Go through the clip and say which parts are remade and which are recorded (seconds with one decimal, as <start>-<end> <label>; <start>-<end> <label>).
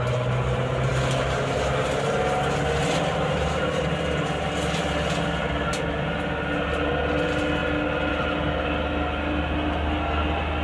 0.0-10.6 recorded